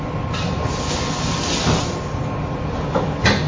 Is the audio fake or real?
real